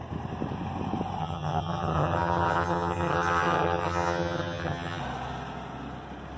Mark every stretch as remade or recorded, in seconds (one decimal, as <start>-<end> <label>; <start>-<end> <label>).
0.0-1.2 recorded; 1.2-5.0 remade; 5.0-6.4 recorded